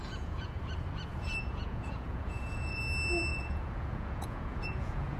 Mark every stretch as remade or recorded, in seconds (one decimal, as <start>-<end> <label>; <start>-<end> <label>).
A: 0.0-0.6 remade; 0.6-1.1 recorded; 1.1-2.8 remade; 2.8-3.3 recorded; 3.3-5.2 remade